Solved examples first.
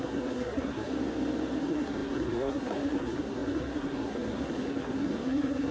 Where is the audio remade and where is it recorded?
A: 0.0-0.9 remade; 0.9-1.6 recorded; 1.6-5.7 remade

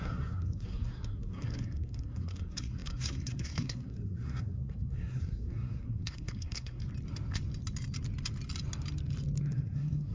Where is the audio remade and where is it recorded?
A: 0.0-6.8 remade; 6.8-9.4 recorded; 9.4-10.1 remade

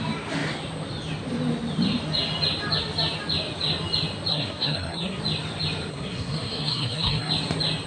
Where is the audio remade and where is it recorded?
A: 0.0-4.3 recorded; 4.3-5.2 remade; 5.2-5.9 recorded; 5.9-7.3 remade; 7.3-7.9 recorded

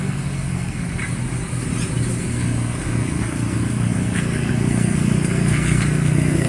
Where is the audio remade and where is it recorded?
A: 0.0-1.0 remade; 1.0-2.2 recorded; 2.2-6.5 remade

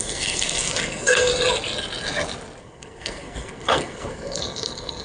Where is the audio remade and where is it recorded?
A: 0.0-1.3 remade; 1.3-2.6 recorded; 2.6-5.0 remade

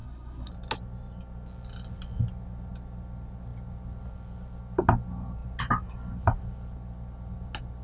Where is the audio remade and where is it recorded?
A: 0.0-0.5 remade; 0.5-7.8 recorded

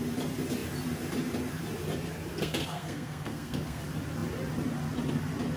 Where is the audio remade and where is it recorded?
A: 0.0-2.3 recorded; 2.3-3.8 remade; 3.8-5.6 recorded

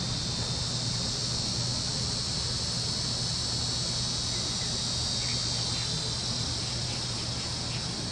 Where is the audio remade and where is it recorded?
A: 0.0-8.1 recorded